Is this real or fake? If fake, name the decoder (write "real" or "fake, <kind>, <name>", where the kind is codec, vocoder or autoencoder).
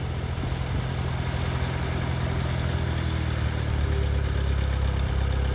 real